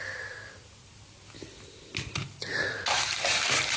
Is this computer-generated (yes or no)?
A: no